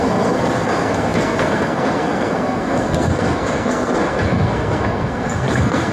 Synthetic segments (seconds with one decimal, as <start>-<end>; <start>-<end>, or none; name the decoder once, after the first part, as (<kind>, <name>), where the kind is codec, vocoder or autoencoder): 0.0-5.9 (codec, SNAC)

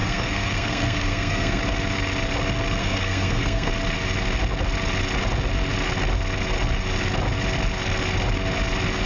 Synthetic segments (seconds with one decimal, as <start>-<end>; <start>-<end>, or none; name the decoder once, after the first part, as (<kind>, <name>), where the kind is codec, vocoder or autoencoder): 0.0-1.6 (codec, SNAC); 2.8-3.7

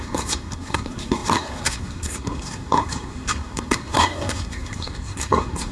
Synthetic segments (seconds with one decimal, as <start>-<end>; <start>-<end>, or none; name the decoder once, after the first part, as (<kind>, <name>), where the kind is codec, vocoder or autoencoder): 0.0-5.7 (codec, SNAC)

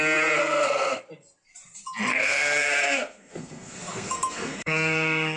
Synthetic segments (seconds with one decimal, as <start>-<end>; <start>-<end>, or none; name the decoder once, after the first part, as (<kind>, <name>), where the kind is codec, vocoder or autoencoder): 0.4-1.0 (codec, SNAC); 2.1-5.4